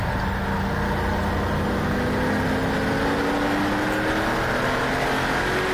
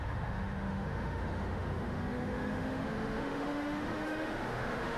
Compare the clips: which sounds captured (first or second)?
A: first